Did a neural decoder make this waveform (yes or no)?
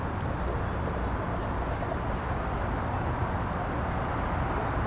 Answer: no